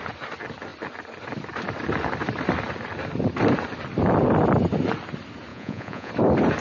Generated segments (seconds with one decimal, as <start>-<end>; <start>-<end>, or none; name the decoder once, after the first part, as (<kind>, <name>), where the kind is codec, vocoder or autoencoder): 5.5-6.1 (vocoder, Vocos)